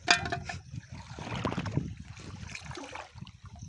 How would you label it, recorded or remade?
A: recorded